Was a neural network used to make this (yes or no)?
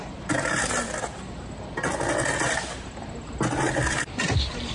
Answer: no